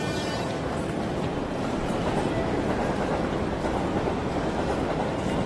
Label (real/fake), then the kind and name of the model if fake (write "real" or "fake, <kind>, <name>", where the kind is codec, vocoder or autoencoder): fake, vocoder, BigVGAN v2